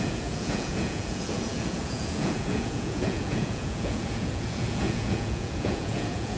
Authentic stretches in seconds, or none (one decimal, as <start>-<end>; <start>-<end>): none